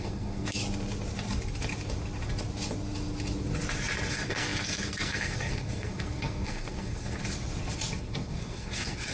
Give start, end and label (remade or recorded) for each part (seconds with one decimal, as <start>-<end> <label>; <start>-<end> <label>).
0.0-0.6 remade; 0.6-4.1 recorded; 4.1-7.2 remade; 7.2-8.0 recorded; 8.0-9.1 remade